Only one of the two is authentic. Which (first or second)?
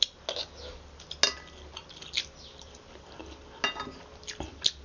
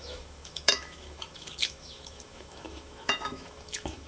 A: first